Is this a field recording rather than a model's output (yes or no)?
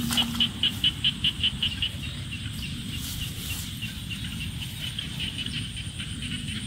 yes